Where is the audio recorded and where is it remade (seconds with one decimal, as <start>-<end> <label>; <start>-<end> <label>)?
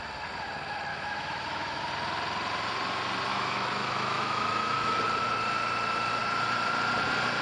0.0-0.9 recorded; 0.9-1.8 remade; 1.8-3.3 recorded; 3.3-5.0 remade; 5.0-7.4 recorded